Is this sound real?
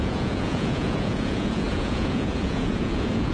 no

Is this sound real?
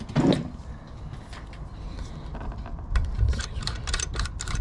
yes